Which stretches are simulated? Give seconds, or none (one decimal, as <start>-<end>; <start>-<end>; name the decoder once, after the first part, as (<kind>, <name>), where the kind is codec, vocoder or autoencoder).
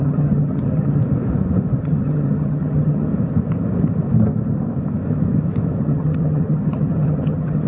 0.0-1.0 (vocoder, HiFi-GAN); 1.8-3.1; 5.8-7.7